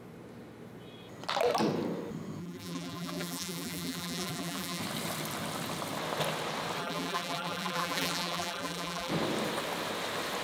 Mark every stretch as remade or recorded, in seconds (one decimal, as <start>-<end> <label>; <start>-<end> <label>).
0.0-2.4 recorded; 2.4-4.8 remade; 4.8-6.8 recorded; 6.8-9.1 remade; 9.1-10.4 recorded